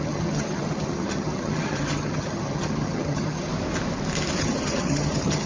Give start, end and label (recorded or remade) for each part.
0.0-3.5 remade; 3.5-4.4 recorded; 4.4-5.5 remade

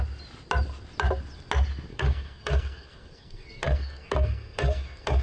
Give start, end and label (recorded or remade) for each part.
0.0-1.9 recorded; 1.9-5.2 remade

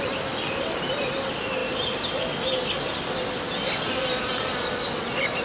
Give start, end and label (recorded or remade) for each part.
0.0-5.4 recorded

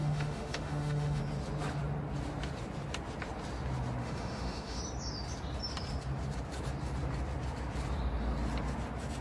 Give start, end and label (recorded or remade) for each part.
0.0-1.2 remade; 1.2-4.0 recorded; 4.0-4.8 remade; 4.8-9.2 recorded

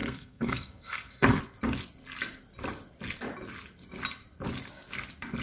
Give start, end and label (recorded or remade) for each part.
0.0-1.4 remade; 1.4-5.4 recorded